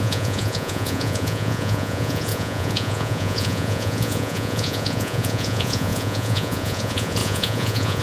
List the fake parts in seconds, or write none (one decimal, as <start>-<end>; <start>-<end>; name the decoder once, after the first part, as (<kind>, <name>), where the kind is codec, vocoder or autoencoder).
0.0-8.0 (vocoder, Vocos)